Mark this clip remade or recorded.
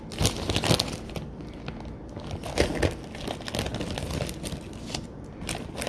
recorded